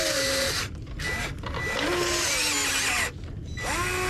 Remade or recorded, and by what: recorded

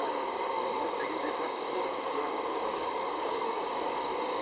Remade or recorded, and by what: remade, codec, DAC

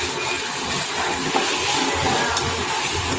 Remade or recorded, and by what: recorded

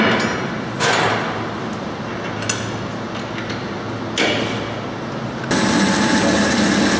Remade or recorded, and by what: recorded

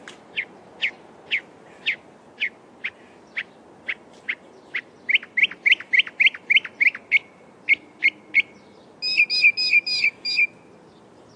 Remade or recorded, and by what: recorded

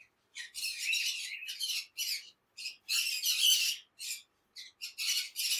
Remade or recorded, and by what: recorded